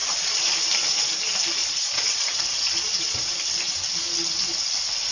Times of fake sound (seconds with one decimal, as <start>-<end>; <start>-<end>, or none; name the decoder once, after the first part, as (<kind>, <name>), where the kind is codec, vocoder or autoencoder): 0.0-0.5 (vocoder, Vocos); 1.6-3.3